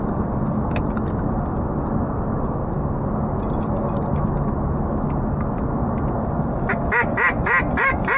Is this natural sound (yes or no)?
yes